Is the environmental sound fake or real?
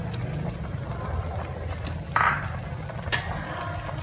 real